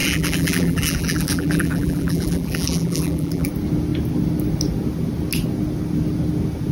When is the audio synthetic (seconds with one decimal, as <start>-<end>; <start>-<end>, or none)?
0.0-3.5